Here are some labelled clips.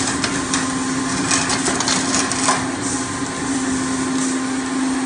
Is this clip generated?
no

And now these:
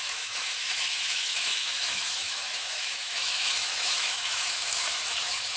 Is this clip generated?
yes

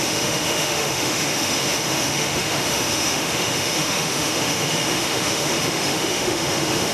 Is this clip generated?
yes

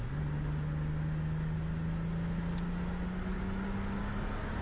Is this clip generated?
no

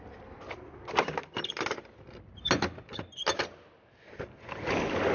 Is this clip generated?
no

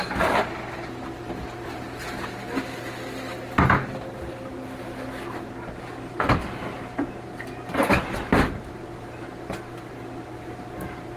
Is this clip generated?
no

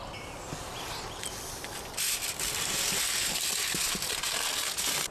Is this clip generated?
no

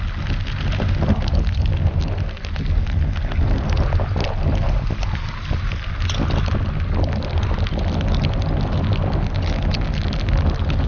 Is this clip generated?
no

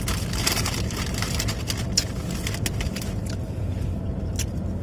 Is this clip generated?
no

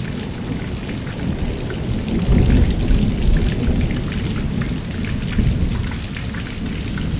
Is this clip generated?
no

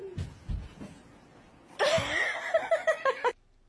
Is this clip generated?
no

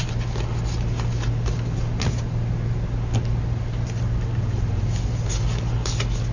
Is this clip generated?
no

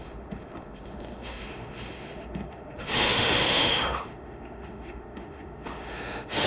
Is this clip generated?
yes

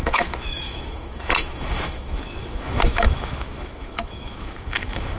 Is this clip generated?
yes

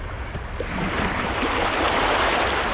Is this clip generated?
no